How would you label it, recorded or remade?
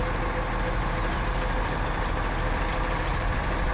recorded